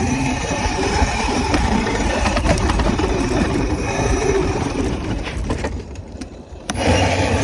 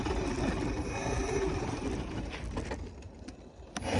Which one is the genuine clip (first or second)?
second